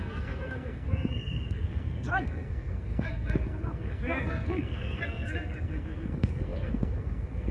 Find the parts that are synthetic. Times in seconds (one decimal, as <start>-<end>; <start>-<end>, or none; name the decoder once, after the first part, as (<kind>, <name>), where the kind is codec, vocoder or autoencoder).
0.0-7.5 (codec, SNAC)